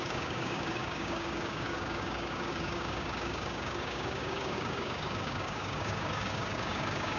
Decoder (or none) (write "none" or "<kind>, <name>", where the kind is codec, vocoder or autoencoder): codec, DAC